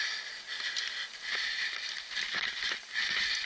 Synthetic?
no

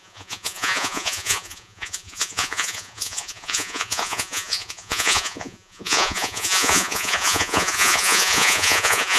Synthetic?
yes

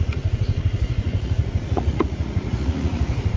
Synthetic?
yes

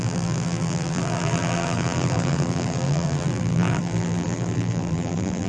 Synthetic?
yes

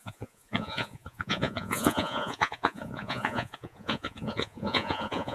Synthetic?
yes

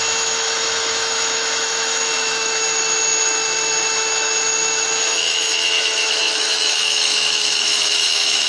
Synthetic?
yes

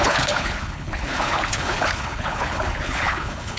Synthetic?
yes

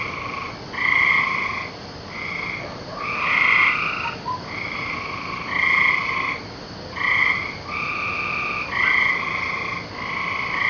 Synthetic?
no